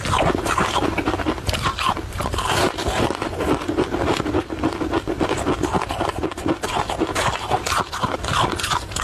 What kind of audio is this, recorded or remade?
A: recorded